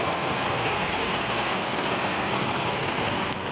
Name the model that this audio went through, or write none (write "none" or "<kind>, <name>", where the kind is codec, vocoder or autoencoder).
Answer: codec, SNAC